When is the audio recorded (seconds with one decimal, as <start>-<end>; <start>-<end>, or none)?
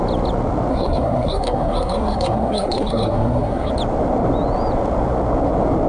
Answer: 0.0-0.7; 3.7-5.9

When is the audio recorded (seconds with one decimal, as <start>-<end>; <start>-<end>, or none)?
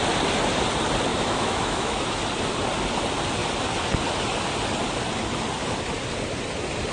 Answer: 0.0-1.1; 2.2-6.9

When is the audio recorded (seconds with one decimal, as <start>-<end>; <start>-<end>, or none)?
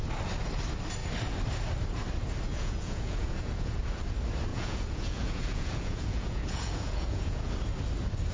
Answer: 0.0-2.5; 3.8-4.5; 7.5-8.3